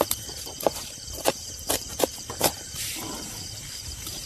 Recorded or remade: remade